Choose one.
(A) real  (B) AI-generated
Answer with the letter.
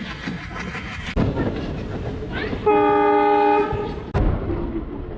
A